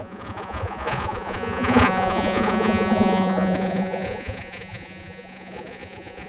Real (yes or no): no